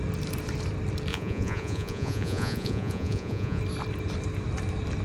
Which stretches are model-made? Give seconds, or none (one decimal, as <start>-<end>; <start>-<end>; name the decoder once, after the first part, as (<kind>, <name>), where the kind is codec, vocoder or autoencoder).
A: 1.1-3.6 (vocoder, Vocos)